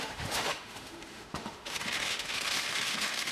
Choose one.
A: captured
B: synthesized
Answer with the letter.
B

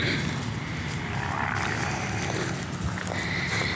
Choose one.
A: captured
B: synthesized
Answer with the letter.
A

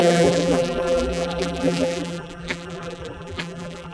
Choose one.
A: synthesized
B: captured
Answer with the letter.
A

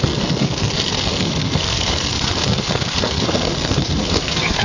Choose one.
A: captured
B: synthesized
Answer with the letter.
B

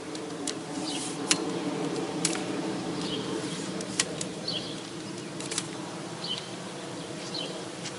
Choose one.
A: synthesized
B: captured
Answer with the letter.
A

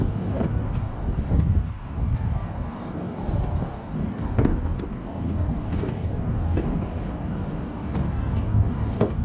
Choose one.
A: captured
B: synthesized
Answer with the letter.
B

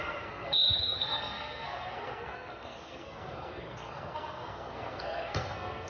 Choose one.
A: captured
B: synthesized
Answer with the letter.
B